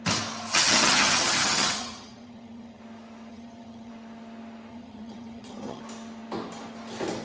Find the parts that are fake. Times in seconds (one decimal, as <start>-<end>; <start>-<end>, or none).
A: 0.5-2.8; 3.3-3.9; 4.7-5.8